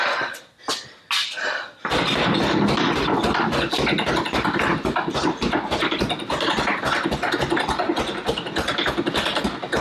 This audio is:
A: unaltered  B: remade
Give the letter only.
A